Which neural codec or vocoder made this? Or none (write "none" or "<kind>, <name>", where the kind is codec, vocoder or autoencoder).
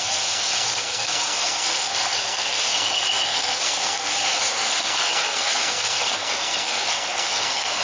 codec, SNAC